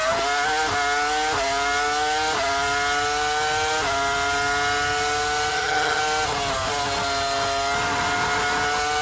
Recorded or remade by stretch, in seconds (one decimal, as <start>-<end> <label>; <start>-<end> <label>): 0.0-5.5 recorded; 5.5-6.0 remade; 6.0-9.0 recorded